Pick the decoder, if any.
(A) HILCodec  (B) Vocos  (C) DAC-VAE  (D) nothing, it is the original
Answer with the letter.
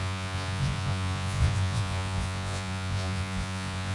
B